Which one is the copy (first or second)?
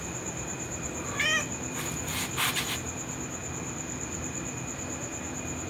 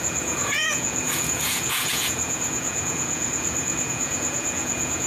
second